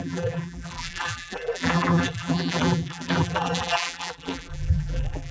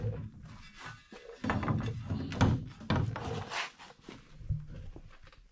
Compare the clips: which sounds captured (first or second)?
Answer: second